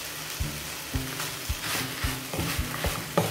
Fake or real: real